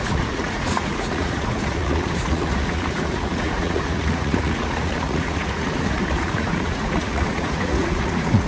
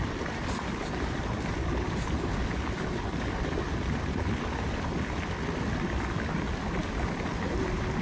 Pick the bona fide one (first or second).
second